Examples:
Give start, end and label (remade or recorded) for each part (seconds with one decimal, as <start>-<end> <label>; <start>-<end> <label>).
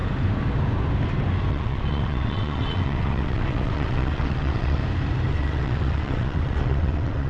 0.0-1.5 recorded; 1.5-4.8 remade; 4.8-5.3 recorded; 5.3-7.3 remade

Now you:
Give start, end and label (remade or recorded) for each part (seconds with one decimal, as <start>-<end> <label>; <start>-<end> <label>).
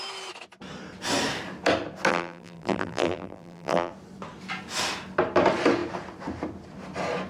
0.0-2.1 recorded; 2.1-3.9 remade; 3.9-7.3 recorded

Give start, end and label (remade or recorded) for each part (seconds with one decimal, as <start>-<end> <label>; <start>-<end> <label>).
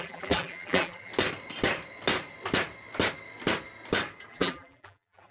0.0-1.1 remade; 1.1-4.3 recorded; 4.3-5.3 remade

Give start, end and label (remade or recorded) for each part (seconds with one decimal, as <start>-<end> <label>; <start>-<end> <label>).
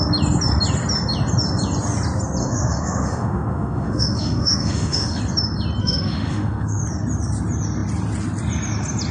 0.0-2.4 recorded; 2.4-5.2 remade; 5.2-5.8 recorded; 5.8-6.8 remade; 6.8-9.1 recorded